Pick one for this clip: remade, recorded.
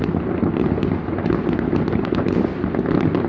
recorded